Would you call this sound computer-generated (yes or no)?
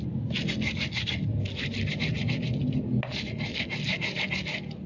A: no